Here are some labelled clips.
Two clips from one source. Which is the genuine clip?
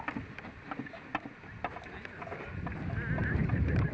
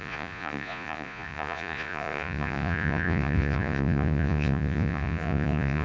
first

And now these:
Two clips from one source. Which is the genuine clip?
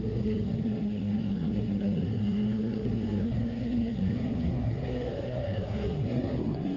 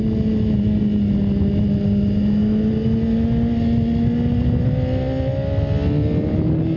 second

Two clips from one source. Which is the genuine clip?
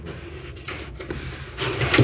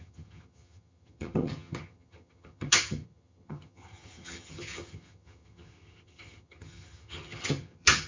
first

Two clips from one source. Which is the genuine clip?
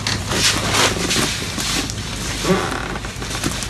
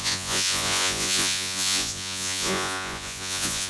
first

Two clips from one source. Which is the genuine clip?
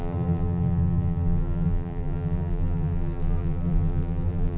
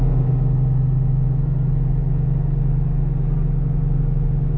second